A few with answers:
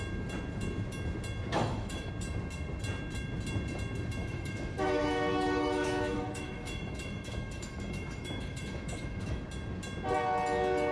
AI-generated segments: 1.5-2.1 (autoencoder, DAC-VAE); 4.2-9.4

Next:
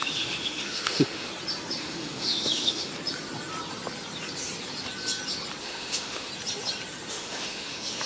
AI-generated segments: 0.0-1.3 (autoencoder, DAC-VAE); 1.8-2.9; 5.6-6.3; 7.1-8.1

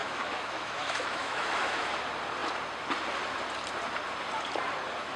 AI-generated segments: 0.0-1.9 (autoencoder, DAC-VAE)

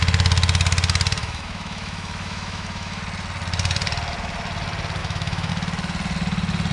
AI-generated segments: 1.2-3.0 (autoencoder, DAC-VAE); 5.0-5.5

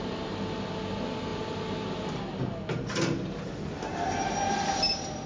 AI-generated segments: none

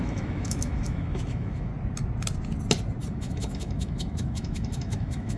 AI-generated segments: 0.0-1.7 (autoencoder, DAC-VAE); 3.1-5.4